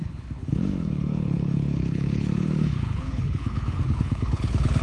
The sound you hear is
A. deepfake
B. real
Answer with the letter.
A